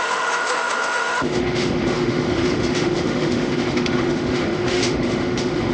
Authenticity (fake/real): fake